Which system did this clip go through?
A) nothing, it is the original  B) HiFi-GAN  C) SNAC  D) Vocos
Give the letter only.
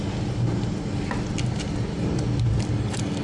A